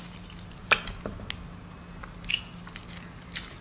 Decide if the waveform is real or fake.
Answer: real